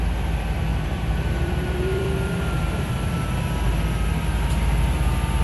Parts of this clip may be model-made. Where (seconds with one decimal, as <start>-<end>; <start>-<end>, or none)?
0.7-2.9